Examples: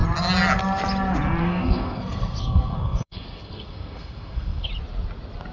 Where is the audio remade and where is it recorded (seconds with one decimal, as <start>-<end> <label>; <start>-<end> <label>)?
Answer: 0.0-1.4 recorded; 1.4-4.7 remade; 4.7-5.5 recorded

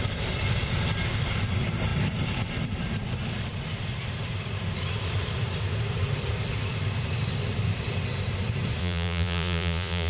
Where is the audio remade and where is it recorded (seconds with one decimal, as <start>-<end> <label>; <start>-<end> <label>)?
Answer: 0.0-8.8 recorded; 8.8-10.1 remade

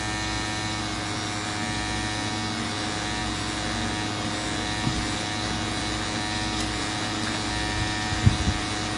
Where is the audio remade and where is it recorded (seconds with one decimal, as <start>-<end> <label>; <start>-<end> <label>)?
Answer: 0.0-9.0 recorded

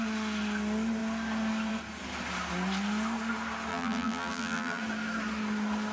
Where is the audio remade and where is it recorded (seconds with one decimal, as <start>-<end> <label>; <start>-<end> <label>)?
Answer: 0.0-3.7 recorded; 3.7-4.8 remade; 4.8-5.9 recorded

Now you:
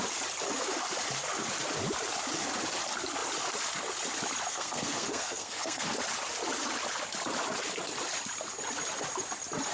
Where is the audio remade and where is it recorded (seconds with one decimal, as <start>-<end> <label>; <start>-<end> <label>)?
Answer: 0.0-4.5 recorded; 4.5-5.9 remade; 5.9-9.7 recorded

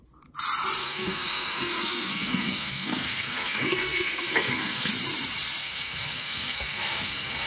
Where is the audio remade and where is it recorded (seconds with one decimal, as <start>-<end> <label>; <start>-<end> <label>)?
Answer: 0.0-0.8 recorded; 0.8-4.9 remade; 4.9-5.6 recorded; 5.6-7.5 remade